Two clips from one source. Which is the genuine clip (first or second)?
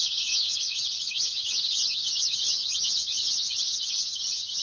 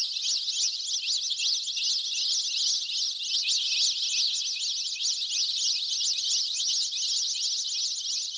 second